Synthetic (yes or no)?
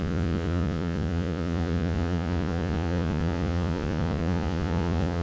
yes